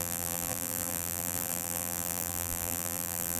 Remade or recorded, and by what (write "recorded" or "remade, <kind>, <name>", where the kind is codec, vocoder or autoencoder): remade, vocoder, BigVGAN v2